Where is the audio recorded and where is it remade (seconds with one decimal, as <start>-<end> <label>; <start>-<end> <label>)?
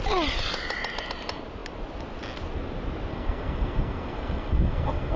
0.0-3.1 recorded; 3.1-5.2 remade